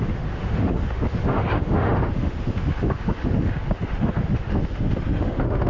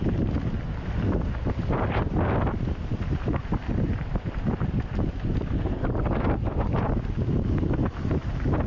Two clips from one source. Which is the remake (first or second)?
first